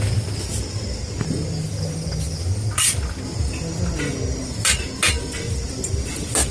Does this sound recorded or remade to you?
recorded